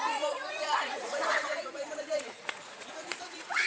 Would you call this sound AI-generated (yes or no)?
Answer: yes